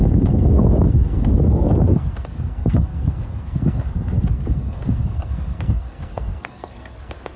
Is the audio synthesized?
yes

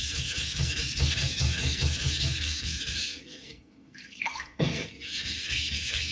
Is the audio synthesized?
yes